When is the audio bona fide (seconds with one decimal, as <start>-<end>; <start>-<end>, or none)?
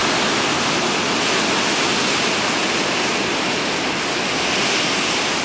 0.0-5.4